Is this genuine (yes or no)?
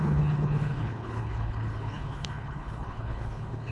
no